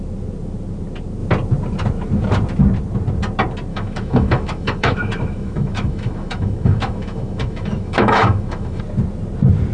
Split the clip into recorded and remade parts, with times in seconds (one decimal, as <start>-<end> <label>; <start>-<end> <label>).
0.0-3.7 recorded; 3.7-8.8 remade; 8.8-9.7 recorded